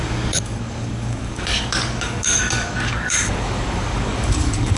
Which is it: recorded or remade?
remade